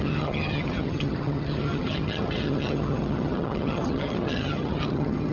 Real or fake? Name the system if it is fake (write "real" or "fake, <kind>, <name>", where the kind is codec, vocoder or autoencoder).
fake, vocoder, HiFi-GAN